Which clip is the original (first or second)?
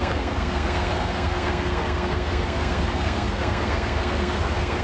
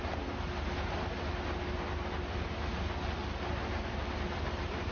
second